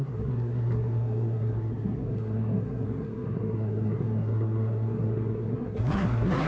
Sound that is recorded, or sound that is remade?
remade